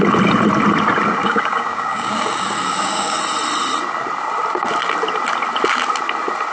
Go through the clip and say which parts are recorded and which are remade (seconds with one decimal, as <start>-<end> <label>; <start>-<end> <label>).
0.0-1.2 recorded; 1.2-3.2 remade; 3.2-6.5 recorded